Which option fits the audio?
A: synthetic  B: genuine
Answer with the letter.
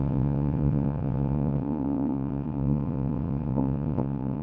A